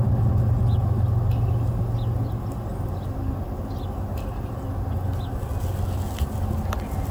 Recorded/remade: recorded